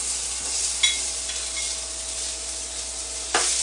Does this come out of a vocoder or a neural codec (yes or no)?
no